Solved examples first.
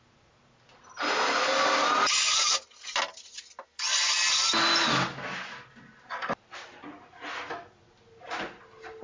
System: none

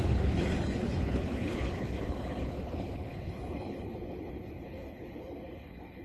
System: codec, HILCodec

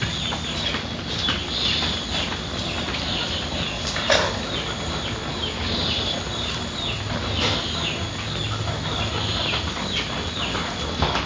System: none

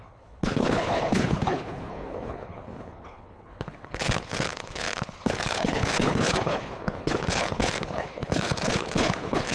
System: codec, HILCodec